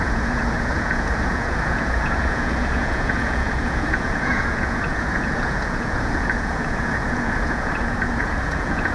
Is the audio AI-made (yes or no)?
yes